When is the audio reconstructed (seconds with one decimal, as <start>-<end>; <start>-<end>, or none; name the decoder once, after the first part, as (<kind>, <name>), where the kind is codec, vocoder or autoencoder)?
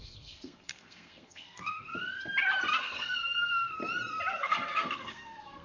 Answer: 0.0-1.9 (codec, SNAC); 2.8-3.8; 4.3-5.6